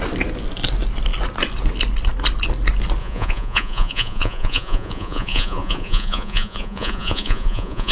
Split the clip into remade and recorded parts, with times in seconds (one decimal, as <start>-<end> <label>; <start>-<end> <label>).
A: 0.0-3.0 recorded; 3.0-7.9 remade